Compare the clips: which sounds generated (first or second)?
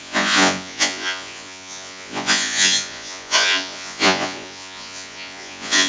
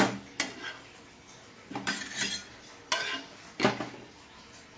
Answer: first